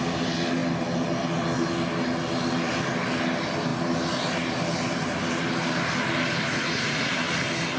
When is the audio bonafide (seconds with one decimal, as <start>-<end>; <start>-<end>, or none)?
0.0-6.5; 7.1-7.8